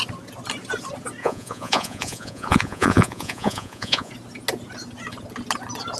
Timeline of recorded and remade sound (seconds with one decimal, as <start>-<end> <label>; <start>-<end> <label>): 0.0-1.2 recorded; 1.2-4.1 remade; 4.1-6.0 recorded